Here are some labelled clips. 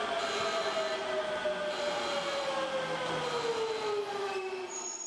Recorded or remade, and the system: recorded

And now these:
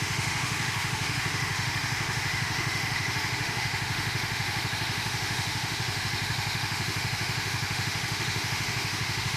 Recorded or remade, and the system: remade, autoencoder, DAC-VAE